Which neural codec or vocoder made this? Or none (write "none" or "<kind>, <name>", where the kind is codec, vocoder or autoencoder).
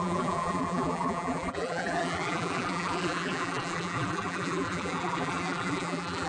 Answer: vocoder, BigVGAN v2